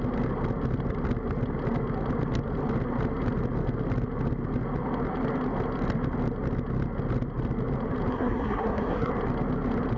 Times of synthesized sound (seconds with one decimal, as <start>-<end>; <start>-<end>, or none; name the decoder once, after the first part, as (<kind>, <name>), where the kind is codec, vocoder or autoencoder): 8.1-9.1 (codec, SNAC)